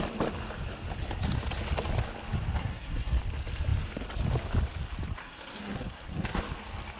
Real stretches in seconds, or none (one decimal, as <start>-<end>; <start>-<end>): 0.0-2.6; 3.2-5.2; 6.4-7.0